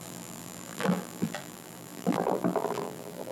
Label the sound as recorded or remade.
remade